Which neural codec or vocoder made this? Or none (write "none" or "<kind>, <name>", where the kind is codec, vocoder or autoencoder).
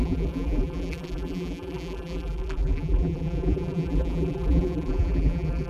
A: vocoder, BigVGAN v2